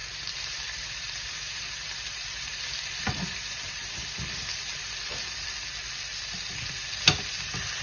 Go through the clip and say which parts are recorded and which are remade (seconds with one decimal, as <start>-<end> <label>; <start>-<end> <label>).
0.0-3.9 remade; 3.9-7.8 recorded